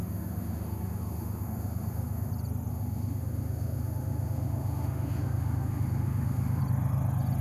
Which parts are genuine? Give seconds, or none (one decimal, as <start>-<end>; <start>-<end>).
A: 2.3-2.7; 6.6-7.4